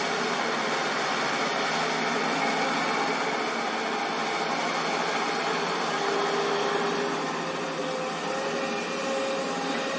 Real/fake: real